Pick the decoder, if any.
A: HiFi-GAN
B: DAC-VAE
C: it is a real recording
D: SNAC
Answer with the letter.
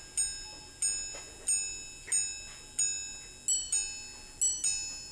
C